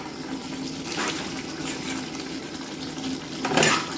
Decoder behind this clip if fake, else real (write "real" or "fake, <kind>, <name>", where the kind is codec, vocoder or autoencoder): real